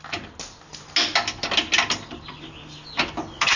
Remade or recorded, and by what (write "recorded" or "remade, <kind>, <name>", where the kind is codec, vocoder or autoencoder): recorded